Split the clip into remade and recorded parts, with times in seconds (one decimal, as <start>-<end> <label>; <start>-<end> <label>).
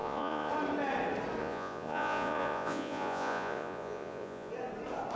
0.0-0.5 remade; 0.5-1.4 recorded; 1.4-4.5 remade; 4.5-5.2 recorded